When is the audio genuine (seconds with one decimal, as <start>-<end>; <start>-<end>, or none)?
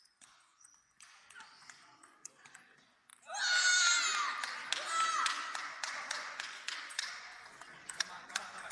3.1-5.1